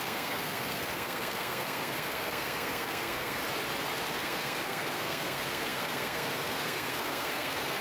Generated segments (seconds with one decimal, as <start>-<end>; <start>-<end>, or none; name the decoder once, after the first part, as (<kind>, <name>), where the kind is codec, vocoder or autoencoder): 0.0-3.4 (codec, SNAC); 4.1-7.8